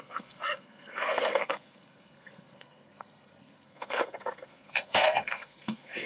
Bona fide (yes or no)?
no